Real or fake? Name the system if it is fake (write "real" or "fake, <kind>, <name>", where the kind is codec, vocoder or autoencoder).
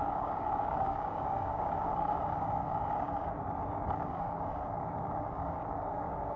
fake, codec, DAC